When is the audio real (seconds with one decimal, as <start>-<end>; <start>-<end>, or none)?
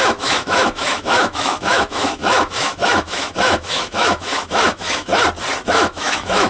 5.1-5.7